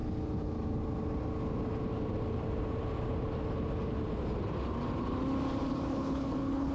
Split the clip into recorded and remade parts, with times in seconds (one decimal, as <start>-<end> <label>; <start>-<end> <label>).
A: 0.0-5.9 recorded; 5.9-6.7 remade